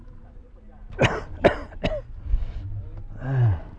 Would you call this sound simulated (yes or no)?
no